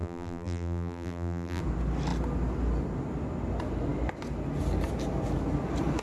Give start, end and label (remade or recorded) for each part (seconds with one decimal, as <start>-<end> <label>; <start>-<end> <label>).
0.0-1.6 remade; 1.6-6.0 recorded